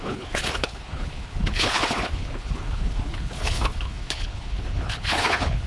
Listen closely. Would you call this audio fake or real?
fake